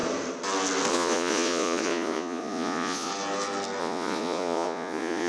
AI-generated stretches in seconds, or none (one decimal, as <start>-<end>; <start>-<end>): 0.9-3.1; 3.8-5.3